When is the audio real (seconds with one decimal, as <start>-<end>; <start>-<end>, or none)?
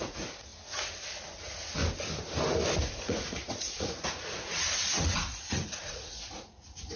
0.5-1.4; 1.8-2.8